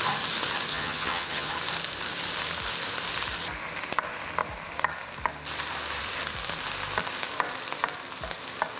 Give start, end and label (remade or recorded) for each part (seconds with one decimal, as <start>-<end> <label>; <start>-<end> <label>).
0.0-0.7 recorded; 0.7-1.5 remade; 1.5-8.8 recorded